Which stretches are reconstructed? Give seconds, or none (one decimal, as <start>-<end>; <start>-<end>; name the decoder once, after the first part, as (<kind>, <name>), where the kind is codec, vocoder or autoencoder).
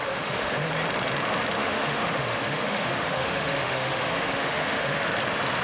0.0-0.7 (autoencoder, DAC-VAE); 1.6-5.0